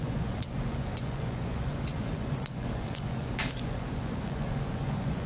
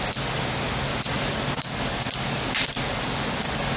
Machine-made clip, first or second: first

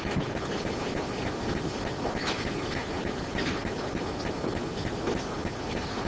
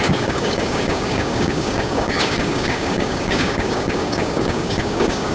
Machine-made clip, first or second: second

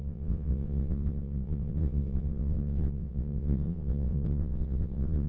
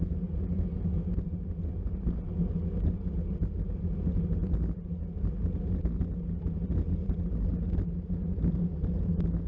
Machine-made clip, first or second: first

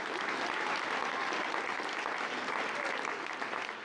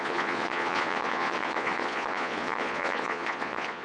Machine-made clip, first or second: second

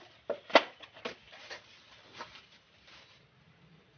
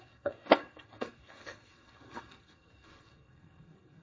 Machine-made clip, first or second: second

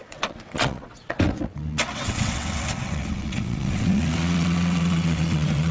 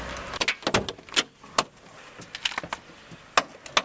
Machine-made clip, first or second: first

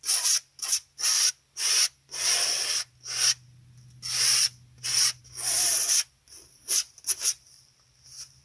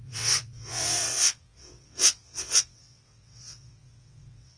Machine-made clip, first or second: second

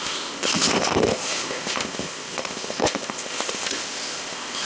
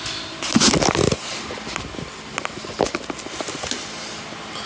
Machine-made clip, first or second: first